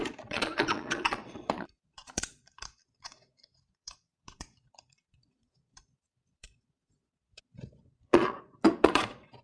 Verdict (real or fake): fake